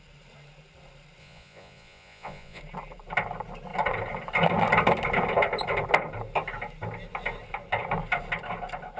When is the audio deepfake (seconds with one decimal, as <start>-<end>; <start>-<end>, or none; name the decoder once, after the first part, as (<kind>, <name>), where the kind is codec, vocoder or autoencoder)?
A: 1.2-2.6 (vocoder, Vocos)